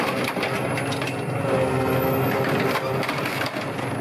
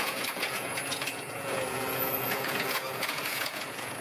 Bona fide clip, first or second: first